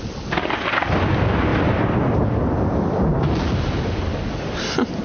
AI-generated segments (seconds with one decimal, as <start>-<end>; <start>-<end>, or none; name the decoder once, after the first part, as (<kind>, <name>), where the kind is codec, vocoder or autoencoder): none